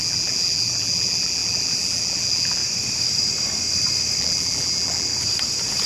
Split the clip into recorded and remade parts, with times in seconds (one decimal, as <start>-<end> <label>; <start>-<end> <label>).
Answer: 0.0-2.6 remade; 2.6-4.2 recorded; 4.2-5.1 remade; 5.1-5.9 recorded